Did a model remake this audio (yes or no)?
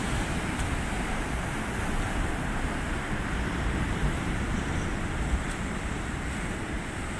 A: yes